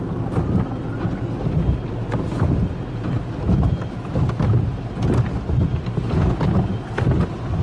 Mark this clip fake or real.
real